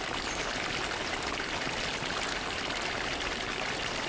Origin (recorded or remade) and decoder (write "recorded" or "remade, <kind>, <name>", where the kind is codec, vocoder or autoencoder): recorded